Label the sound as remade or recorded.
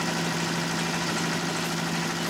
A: recorded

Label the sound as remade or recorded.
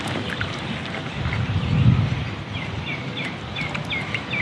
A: remade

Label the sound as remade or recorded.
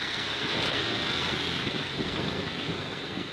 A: remade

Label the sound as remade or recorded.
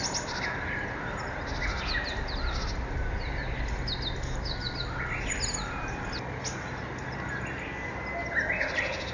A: recorded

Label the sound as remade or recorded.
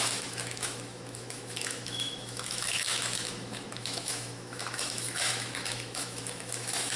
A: remade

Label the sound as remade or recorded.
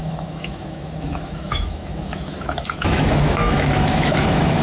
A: remade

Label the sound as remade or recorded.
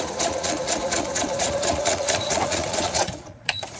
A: remade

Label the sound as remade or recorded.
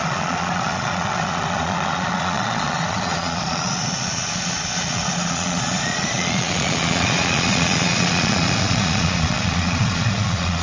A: remade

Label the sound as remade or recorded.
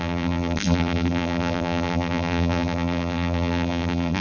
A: remade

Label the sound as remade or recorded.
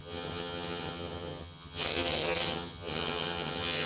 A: remade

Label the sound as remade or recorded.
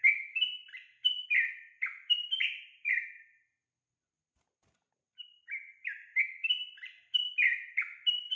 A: recorded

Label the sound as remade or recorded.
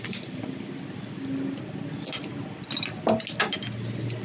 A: recorded